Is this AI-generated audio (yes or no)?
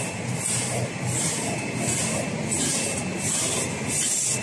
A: no